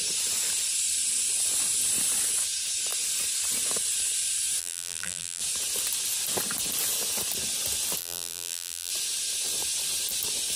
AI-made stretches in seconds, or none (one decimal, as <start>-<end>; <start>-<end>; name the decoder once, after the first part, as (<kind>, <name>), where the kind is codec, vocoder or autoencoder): 4.6-5.4 (vocoder, BigVGAN v2); 8.0-8.9